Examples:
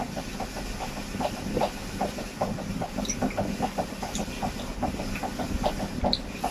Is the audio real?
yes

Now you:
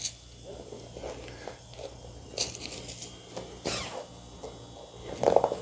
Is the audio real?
yes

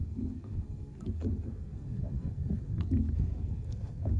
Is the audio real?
no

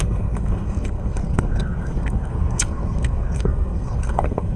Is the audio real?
no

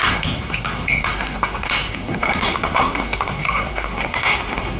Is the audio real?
no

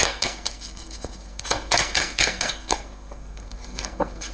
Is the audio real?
no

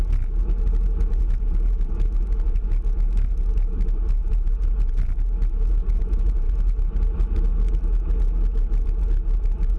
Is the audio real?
yes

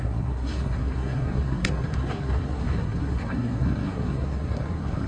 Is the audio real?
no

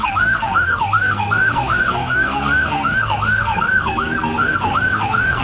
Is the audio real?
no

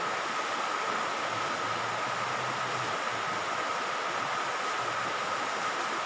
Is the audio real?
yes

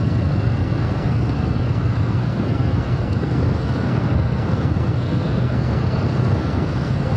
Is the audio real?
no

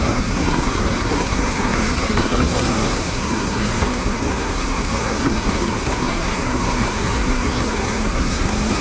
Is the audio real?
no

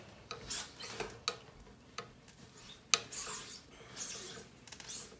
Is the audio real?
yes